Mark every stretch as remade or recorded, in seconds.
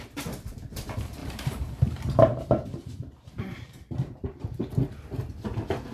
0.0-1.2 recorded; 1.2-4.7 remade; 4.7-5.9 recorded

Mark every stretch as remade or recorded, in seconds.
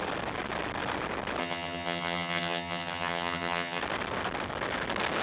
0.0-1.4 recorded; 1.4-3.8 remade; 3.8-5.2 recorded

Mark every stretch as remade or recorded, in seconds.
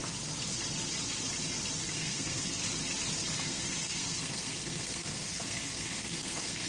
0.0-1.9 recorded; 1.9-2.6 remade; 2.6-3.4 recorded; 3.4-6.7 remade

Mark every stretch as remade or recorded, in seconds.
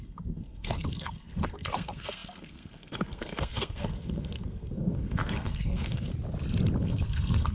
0.0-6.1 remade; 6.1-6.8 recorded; 6.8-7.5 remade